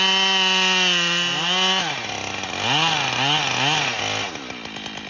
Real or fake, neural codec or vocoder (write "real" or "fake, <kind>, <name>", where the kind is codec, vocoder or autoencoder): real